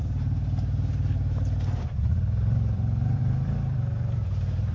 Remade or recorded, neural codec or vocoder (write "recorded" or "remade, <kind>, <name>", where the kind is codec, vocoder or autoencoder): remade, vocoder, BigVGAN v2